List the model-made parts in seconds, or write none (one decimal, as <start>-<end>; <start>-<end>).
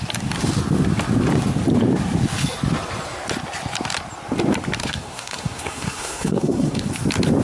4.8-6.9